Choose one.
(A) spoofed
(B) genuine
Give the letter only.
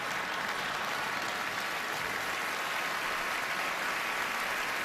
B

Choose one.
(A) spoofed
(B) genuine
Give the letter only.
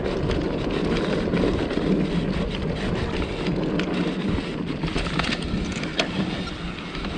B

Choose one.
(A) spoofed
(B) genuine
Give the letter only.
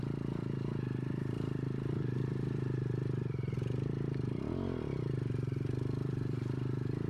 A